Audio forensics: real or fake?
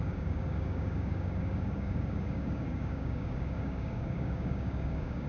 fake